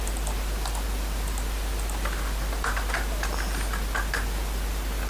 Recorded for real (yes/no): yes